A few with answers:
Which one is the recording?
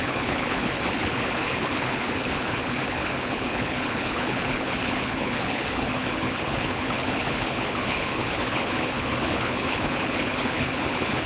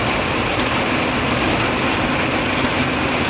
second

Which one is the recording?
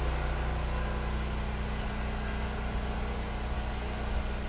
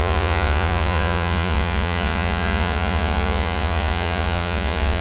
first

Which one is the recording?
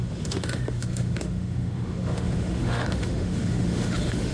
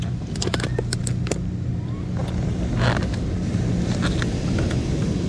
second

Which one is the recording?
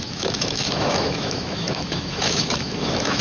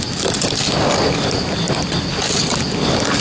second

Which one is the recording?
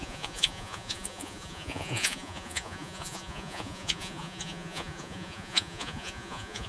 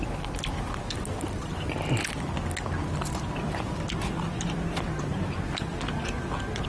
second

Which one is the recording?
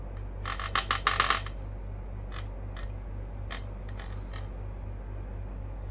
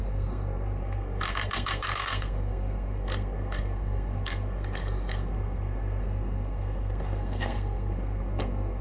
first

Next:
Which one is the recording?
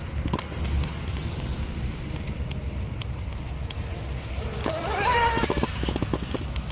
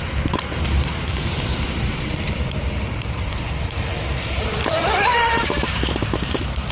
first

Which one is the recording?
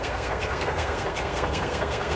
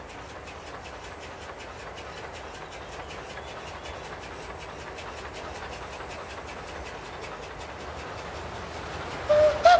second